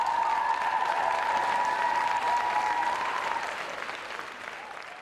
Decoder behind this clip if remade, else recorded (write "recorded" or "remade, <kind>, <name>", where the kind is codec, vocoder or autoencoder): recorded